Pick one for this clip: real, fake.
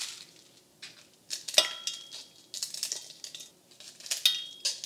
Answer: real